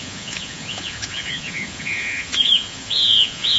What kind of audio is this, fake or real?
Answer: fake